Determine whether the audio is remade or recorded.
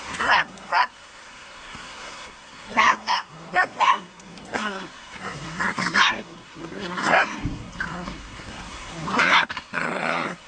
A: remade